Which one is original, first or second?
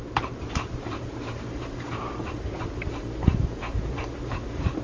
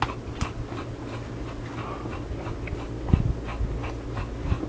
second